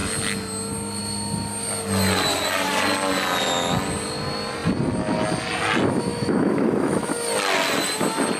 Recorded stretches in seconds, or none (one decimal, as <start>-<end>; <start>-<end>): 0.0-6.1; 7.1-8.4